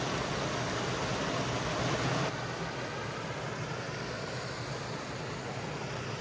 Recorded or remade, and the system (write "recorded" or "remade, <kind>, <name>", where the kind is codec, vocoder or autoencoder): recorded